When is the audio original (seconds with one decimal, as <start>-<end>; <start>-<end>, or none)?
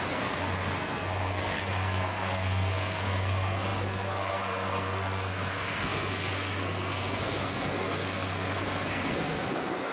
none